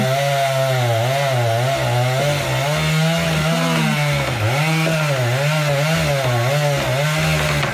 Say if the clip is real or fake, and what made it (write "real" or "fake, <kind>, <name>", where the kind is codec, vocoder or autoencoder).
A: real